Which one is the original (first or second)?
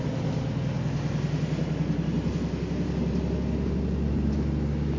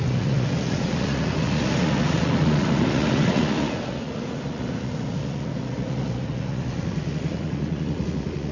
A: first